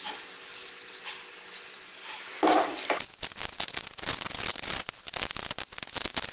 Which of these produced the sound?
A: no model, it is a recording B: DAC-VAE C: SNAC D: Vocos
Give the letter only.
A